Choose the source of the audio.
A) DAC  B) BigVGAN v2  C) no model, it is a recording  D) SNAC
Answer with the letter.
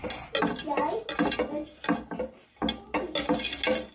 C